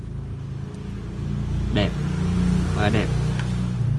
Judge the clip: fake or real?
real